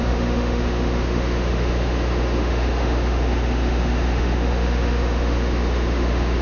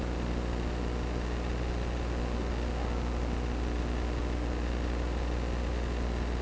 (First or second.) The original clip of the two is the second